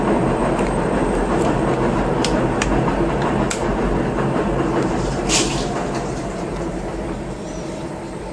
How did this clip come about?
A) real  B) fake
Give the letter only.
B